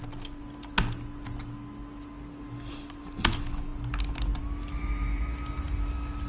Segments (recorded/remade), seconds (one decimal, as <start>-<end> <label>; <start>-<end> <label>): 0.0-6.3 recorded